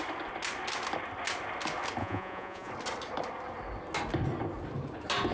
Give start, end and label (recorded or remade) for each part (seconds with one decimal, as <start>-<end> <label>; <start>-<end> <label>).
0.0-2.0 recorded; 2.0-2.7 remade; 2.7-5.3 recorded